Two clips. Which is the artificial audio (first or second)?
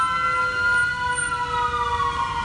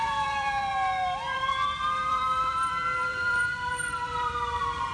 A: second